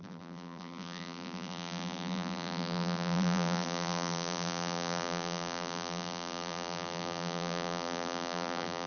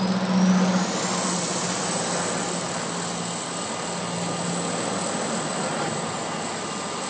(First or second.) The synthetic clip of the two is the first